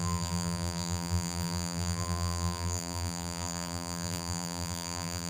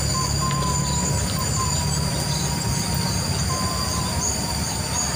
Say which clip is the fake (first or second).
first